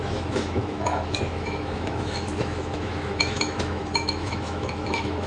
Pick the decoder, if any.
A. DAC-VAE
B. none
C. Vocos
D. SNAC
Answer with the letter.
A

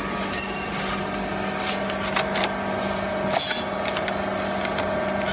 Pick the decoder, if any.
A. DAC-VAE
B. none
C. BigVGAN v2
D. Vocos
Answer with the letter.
B